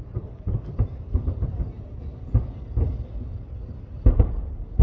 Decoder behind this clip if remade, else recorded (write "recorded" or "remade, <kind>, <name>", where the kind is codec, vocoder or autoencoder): recorded